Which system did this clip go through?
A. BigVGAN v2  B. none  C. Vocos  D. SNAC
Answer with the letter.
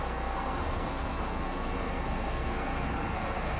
D